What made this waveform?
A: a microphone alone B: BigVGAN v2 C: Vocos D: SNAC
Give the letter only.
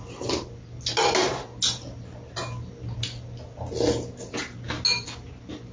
A